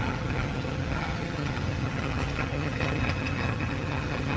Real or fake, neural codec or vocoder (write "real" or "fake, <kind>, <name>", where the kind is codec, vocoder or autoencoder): fake, vocoder, HiFi-GAN